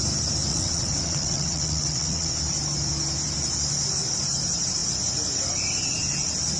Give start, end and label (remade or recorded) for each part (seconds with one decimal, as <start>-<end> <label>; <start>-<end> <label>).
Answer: 0.0-0.5 recorded; 0.5-2.3 remade; 2.3-6.6 recorded